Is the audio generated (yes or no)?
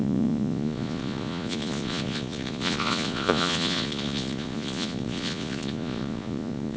yes